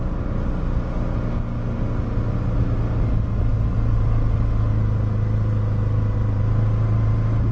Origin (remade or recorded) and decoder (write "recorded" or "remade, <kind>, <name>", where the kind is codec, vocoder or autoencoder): recorded